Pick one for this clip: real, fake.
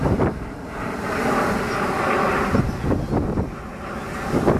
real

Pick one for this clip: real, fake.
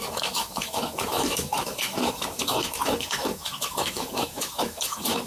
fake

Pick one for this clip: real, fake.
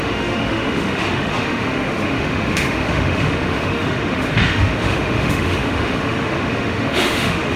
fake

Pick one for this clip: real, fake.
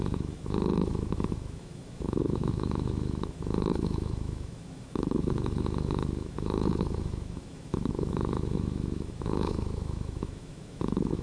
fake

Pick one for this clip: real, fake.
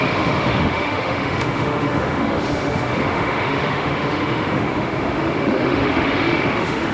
fake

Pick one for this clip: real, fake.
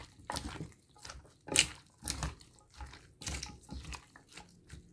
real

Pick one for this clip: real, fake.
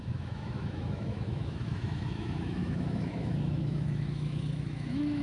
fake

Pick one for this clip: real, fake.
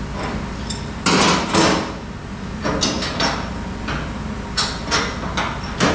real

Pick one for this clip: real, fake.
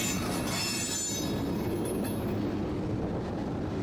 real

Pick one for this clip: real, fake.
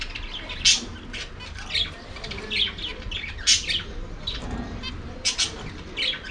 real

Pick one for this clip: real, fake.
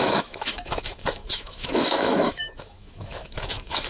fake